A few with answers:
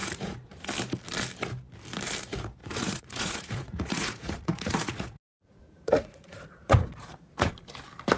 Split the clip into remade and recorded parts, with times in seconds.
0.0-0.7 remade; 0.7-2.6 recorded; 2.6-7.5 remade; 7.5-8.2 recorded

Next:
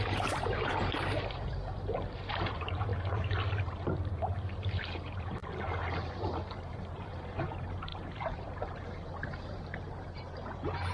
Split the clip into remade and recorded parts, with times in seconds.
0.0-2.9 remade; 2.9-4.2 recorded; 4.2-5.4 remade; 5.4-6.5 recorded; 6.5-10.9 remade

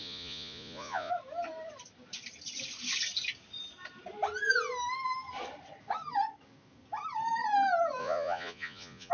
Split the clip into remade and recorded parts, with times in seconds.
0.0-1.1 remade; 1.1-8.0 recorded; 8.0-9.1 remade

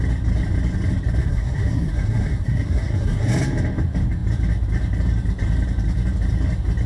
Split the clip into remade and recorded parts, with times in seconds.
0.0-1.2 recorded; 1.2-3.3 remade; 3.3-6.9 recorded

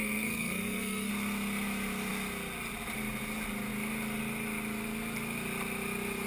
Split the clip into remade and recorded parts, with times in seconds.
0.0-1.1 remade; 1.1-6.3 recorded

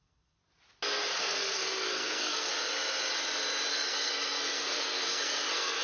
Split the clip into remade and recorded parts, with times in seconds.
0.0-0.4 remade; 0.4-1.2 recorded; 1.2-2.5 remade; 2.5-3.7 recorded; 3.7-5.8 remade

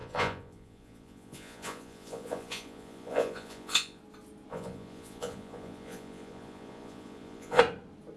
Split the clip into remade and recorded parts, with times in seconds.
0.0-4.0 remade; 4.0-4.5 recorded; 4.5-7.6 remade; 7.6-8.2 recorded

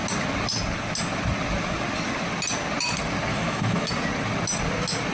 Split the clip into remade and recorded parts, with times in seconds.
0.0-3.3 recorded; 3.3-3.9 remade; 3.9-5.1 recorded